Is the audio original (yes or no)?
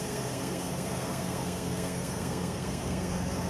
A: no